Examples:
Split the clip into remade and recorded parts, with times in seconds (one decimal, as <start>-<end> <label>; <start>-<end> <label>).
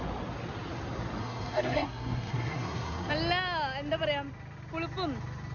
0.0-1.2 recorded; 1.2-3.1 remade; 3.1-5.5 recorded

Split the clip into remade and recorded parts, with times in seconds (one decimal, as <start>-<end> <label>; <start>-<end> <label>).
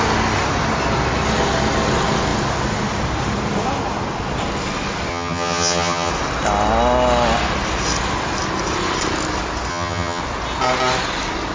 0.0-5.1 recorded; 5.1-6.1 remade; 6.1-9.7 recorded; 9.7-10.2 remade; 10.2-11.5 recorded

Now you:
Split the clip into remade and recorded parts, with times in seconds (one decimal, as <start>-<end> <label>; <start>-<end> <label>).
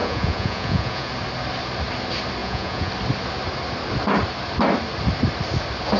0.0-1.1 remade; 1.1-2.4 recorded; 2.4-2.9 remade; 2.9-6.0 recorded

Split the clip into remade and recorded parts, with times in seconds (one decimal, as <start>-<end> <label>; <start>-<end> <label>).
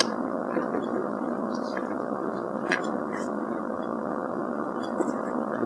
0.0-5.7 remade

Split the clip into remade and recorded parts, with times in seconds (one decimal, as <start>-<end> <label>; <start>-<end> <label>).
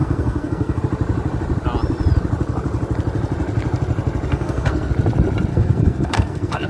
0.0-0.8 remade; 0.8-4.3 recorded; 4.3-4.9 remade; 4.9-5.5 recorded; 5.5-6.7 remade